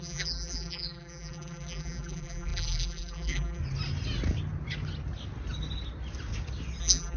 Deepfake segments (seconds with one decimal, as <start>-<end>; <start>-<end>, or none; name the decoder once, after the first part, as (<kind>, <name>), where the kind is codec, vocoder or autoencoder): 0.0-3.6 (vocoder, BigVGAN v2); 6.8-7.2